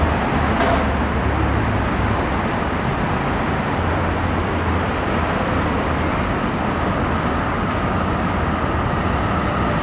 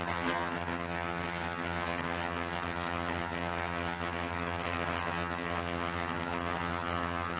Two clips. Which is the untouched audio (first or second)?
first